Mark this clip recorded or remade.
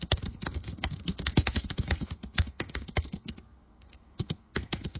remade